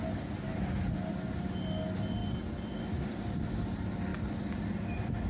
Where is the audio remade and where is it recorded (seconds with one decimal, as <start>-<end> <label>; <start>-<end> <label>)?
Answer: 0.0-5.3 recorded

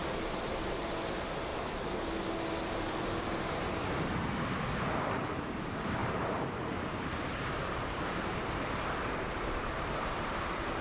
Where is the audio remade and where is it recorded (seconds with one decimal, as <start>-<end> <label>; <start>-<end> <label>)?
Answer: 0.0-1.5 remade; 1.5-5.1 recorded; 5.1-10.8 remade

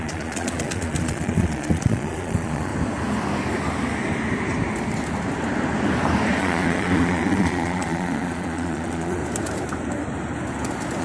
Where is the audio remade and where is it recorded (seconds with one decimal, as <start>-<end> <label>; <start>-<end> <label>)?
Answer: 0.0-2.7 remade; 2.7-6.4 recorded; 6.4-9.2 remade; 9.2-11.0 recorded

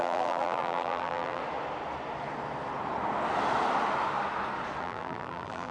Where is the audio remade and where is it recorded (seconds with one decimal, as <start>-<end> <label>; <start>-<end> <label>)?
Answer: 0.0-1.4 remade; 1.4-4.8 recorded; 4.8-5.7 remade

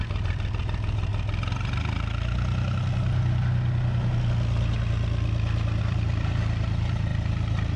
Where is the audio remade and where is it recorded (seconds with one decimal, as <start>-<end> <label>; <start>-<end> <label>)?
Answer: 0.0-1.1 remade; 1.1-5.8 recorded; 5.8-7.8 remade

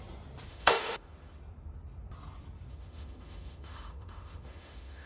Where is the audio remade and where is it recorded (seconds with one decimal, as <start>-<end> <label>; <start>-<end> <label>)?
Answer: 0.0-0.5 recorded; 0.5-1.4 remade; 1.4-2.7 recorded; 2.7-5.1 remade

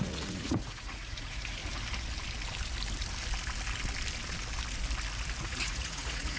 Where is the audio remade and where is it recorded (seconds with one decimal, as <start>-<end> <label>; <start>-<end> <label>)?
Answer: 0.0-1.6 remade; 1.6-5.4 recorded; 5.4-6.4 remade

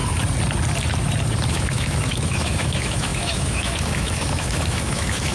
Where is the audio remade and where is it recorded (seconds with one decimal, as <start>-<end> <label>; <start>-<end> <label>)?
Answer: 0.0-1.5 recorded; 1.5-5.3 remade